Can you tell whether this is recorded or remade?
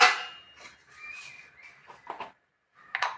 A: recorded